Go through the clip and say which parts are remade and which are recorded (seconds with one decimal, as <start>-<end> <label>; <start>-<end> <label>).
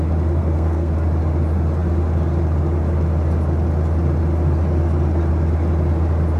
0.0-0.4 recorded; 0.4-0.9 remade; 0.9-6.4 recorded